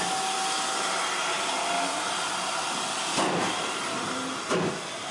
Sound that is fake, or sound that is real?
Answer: real